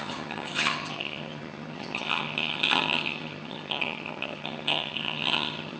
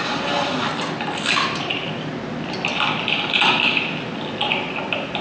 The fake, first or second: first